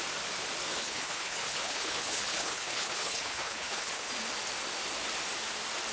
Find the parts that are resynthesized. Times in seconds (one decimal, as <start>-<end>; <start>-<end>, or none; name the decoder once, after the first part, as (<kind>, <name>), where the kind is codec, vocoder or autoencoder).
0.7-4.1 (codec, HILCodec)